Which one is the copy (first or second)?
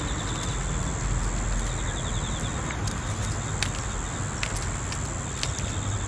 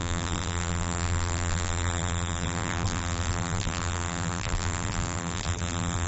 second